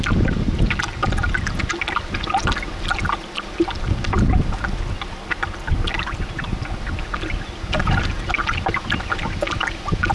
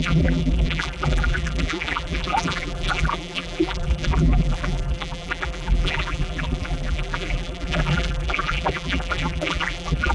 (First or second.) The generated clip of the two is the second